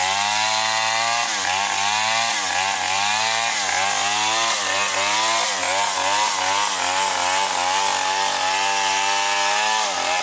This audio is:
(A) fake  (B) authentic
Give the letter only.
B